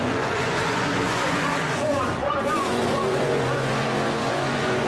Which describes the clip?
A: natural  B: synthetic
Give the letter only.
B